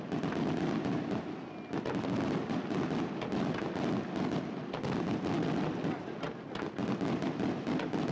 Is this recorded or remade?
recorded